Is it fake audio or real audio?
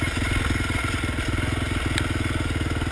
real